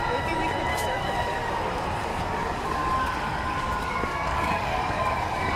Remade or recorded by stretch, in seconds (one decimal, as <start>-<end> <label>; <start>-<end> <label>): 0.0-0.7 recorded; 0.7-1.5 remade; 1.5-2.1 recorded; 2.1-5.6 remade